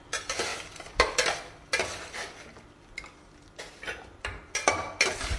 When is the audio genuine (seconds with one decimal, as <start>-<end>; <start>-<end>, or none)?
0.0-5.4